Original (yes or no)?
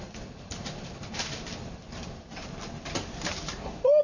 no